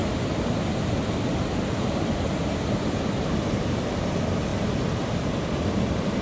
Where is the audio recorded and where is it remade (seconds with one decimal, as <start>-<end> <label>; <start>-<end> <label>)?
0.0-6.2 recorded